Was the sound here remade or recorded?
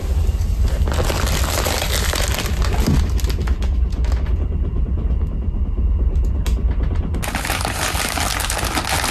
recorded